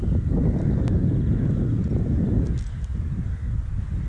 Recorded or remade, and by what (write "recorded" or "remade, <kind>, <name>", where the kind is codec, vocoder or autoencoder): recorded